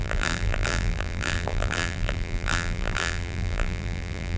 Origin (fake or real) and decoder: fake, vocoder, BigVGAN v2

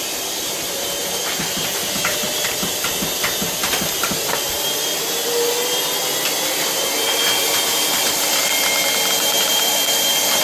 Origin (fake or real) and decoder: fake, vocoder, BigVGAN v2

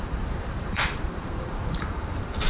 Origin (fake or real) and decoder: fake, vocoder, BigVGAN v2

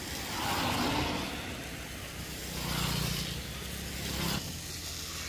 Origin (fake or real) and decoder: real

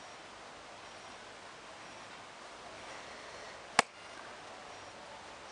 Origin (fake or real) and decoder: real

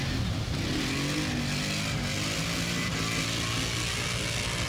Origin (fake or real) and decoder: real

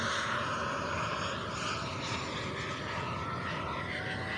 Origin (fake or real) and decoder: real